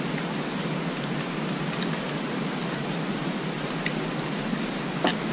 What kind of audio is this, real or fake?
real